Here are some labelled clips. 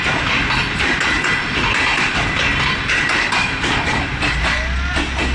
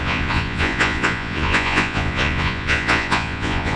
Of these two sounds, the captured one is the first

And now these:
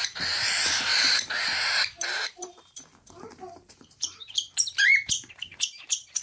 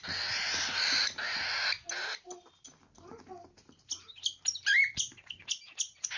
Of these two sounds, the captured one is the second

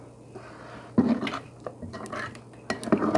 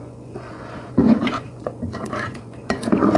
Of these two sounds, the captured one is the first